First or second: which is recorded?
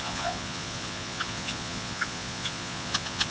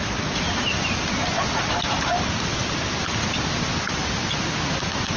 second